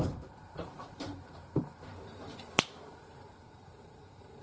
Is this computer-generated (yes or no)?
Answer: yes